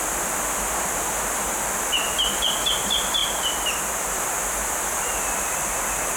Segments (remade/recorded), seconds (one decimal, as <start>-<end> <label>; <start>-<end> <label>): 0.0-6.2 recorded